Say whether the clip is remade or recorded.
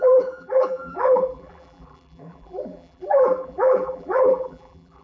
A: remade